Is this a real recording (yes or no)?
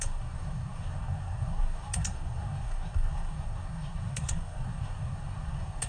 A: no